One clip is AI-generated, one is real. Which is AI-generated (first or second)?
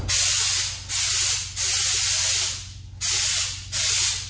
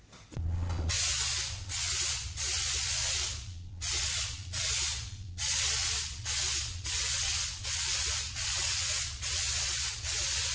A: second